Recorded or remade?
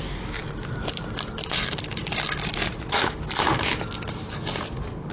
recorded